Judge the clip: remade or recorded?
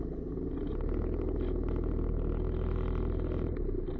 recorded